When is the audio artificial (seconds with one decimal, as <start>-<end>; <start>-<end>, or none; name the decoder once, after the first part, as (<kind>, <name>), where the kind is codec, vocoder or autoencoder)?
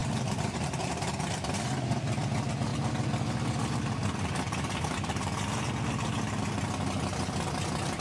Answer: 0.0-1.5 (vocoder, BigVGAN v2)